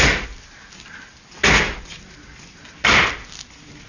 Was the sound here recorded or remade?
recorded